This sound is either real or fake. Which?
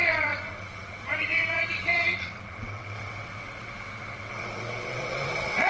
fake